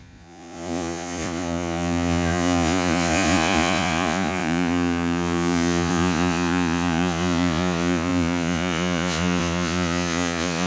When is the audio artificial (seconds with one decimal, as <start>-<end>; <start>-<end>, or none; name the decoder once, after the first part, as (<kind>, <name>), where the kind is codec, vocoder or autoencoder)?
0.0-10.7 (vocoder, Vocos)